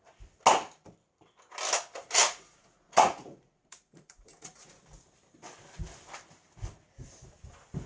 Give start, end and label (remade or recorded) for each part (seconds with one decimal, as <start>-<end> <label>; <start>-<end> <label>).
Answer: 0.0-2.2 recorded; 2.2-4.8 remade; 4.8-7.9 recorded